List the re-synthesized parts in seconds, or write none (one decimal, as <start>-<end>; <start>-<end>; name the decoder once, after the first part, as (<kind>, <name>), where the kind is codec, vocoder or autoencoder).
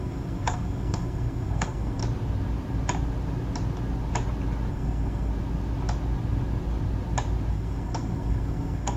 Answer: 0.0-2.0 (codec, SNAC); 4.7-5.3; 7.5-9.0